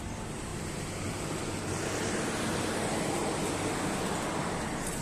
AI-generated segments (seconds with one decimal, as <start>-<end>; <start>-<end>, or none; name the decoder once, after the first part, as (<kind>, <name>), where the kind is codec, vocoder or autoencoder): 0.0-3.2 (vocoder, BigVGAN v2); 4.3-5.0